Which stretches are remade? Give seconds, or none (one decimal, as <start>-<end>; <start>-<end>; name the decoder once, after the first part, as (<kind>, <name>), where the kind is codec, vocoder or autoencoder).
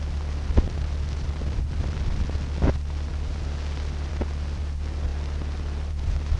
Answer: none